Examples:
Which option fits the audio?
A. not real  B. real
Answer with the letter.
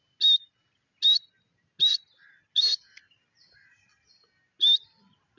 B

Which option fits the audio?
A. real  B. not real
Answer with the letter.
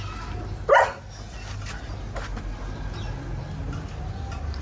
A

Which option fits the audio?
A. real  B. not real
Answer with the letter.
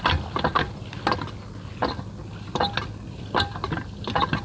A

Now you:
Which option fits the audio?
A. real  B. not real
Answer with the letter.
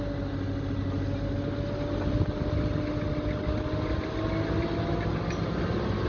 A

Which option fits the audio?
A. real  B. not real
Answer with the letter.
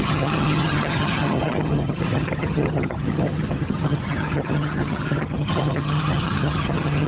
B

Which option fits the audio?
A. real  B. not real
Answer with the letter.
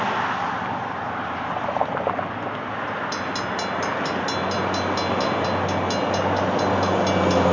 A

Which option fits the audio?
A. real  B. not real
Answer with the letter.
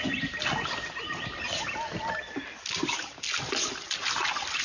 A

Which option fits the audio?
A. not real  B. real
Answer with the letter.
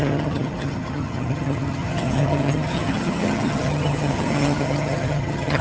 A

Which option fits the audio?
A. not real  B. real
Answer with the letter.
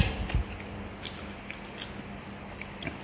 B